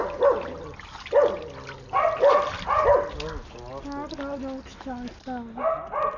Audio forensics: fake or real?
real